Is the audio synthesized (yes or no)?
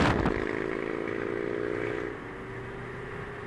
no